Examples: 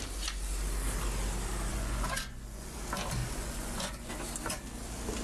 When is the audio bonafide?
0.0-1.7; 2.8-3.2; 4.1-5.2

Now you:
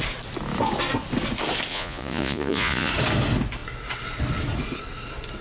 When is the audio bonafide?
0.0-1.7; 2.9-5.4

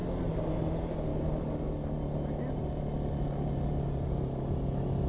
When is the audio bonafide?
0.0-5.1

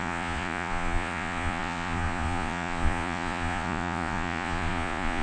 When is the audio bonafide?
none

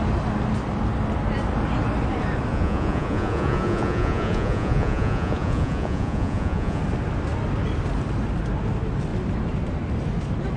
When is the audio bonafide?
0.0-2.5; 6.8-10.6

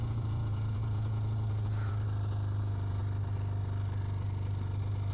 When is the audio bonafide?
1.9-2.6; 3.0-5.1

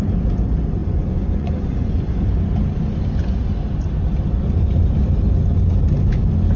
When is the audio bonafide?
0.0-0.8; 2.0-6.6

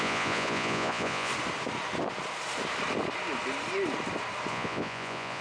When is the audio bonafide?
1.3-4.5